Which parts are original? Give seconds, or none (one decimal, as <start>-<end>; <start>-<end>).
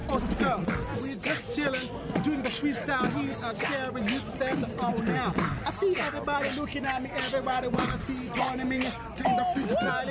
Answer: 0.0-10.1